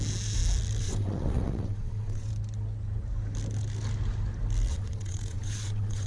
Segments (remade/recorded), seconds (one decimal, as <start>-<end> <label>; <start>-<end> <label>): 0.0-0.8 recorded; 0.8-2.3 remade; 2.3-4.7 recorded; 4.7-6.1 remade